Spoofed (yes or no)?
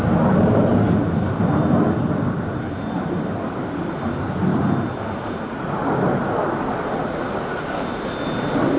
no